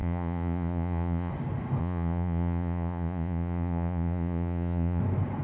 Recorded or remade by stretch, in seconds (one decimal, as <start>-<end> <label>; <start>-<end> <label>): 0.0-1.3 remade; 1.3-1.8 recorded; 1.8-5.0 remade; 5.0-5.4 recorded